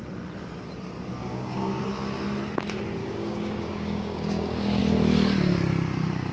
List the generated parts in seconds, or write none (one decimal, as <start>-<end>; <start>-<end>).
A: 1.2-1.8; 3.0-4.8